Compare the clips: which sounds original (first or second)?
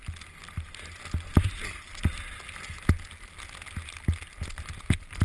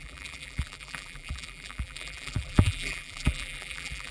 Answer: first